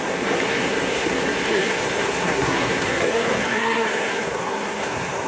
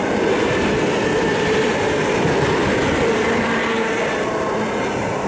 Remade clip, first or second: first